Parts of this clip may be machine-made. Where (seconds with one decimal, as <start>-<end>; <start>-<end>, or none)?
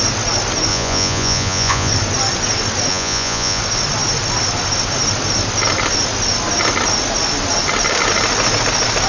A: 0.7-1.9; 2.9-3.6